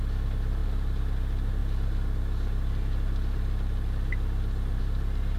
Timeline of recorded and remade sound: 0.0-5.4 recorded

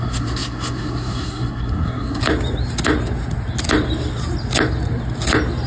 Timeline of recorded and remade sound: 0.0-2.2 remade; 2.2-5.7 recorded

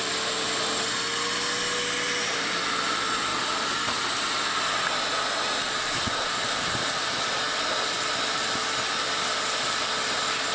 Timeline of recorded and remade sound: 0.0-10.5 recorded

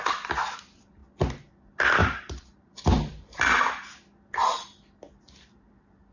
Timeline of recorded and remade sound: 0.0-2.0 recorded; 2.0-2.7 remade; 2.7-6.1 recorded

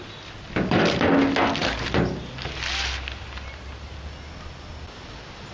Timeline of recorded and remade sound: 0.0-5.5 recorded